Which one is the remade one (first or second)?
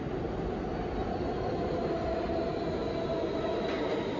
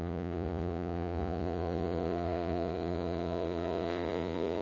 second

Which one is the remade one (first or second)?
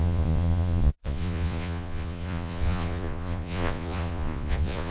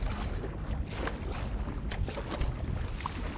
first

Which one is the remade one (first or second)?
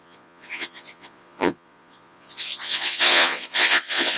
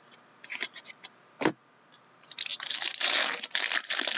first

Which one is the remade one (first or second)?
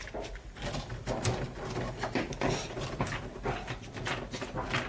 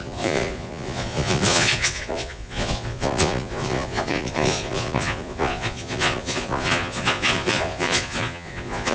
second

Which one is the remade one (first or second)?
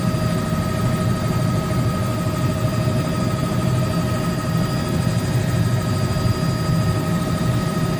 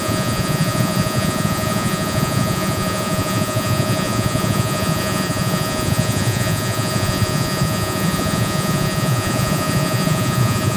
second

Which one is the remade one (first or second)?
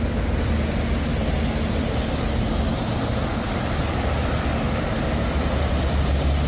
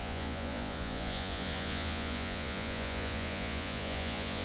second